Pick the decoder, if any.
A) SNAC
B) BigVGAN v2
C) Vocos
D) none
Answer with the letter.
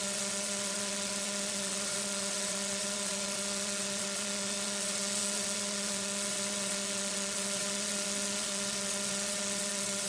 C